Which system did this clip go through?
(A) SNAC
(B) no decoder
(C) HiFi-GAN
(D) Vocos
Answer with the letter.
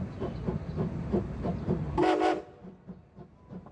B